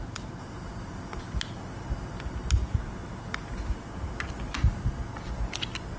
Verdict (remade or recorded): recorded